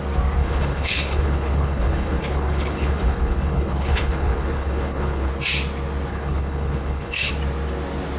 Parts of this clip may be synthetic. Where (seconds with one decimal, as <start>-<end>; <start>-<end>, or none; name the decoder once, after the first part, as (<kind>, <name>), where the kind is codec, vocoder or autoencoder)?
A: 0.4-5.3 (codec, HILCodec); 6.1-7.3